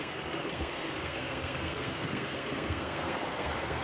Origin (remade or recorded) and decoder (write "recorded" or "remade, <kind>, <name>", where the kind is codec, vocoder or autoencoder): remade, codec, SNAC